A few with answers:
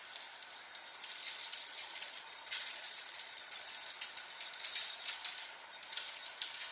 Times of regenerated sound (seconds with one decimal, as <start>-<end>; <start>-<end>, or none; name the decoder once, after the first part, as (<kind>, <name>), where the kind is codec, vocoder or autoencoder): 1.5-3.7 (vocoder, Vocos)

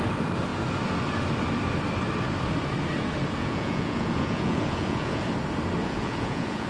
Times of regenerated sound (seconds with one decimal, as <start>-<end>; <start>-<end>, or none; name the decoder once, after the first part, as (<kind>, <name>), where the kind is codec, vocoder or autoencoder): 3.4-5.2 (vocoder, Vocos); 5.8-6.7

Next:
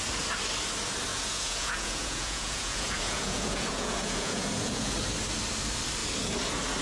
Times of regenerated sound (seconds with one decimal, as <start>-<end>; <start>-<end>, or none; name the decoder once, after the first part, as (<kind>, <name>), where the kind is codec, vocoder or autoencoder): 1.1-4.9 (vocoder, Vocos)